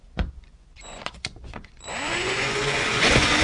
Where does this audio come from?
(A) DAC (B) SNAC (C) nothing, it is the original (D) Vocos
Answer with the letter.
D